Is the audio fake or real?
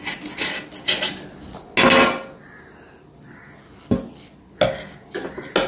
real